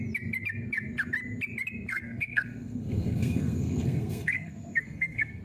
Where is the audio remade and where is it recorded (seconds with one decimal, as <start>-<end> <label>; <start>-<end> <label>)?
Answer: 0.0-1.9 recorded; 1.9-5.4 remade